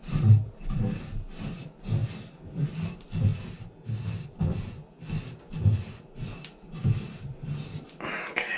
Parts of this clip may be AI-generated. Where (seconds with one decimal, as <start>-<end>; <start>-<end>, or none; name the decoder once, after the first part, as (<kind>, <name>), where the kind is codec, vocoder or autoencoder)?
none